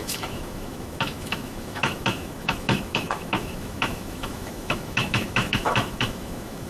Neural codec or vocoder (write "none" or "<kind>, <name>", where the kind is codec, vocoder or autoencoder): autoencoder, DAC-VAE